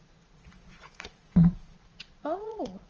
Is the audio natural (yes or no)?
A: no